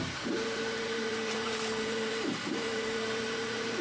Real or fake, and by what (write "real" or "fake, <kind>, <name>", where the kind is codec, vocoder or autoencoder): fake, vocoder, BigVGAN v2